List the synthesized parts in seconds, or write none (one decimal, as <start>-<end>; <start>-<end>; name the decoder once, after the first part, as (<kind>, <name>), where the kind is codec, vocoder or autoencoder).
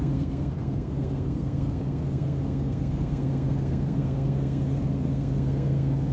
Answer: 0.0-6.1 (codec, SNAC)